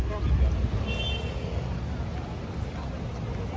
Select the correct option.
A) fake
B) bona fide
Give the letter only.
B